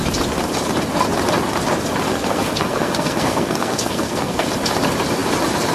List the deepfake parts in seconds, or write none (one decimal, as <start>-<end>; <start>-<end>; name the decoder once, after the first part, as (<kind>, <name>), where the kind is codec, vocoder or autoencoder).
2.1-4.5 (codec, SNAC)